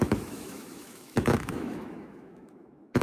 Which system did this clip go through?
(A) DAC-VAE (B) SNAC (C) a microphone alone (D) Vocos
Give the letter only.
A